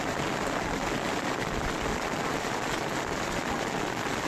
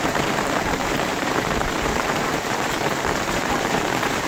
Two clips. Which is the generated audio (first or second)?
second